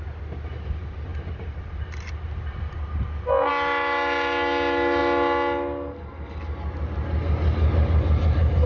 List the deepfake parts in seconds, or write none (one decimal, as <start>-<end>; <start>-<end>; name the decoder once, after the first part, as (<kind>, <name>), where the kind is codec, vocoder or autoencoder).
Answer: none